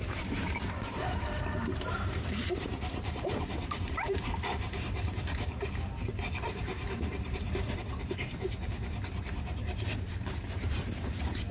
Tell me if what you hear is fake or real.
fake